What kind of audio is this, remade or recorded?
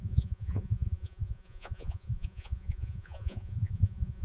remade